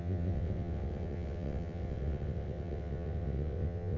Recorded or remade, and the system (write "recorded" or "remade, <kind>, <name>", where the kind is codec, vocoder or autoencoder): remade, vocoder, WaveNeXt